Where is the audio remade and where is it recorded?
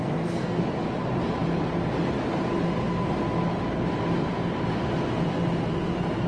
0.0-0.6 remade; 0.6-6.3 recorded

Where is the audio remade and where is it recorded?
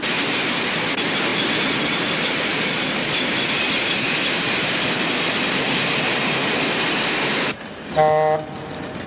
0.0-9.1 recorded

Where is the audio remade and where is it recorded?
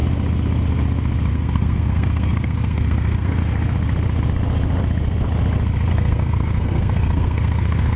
0.0-1.3 recorded; 1.3-3.4 remade; 3.4-5.9 recorded; 5.9-8.0 remade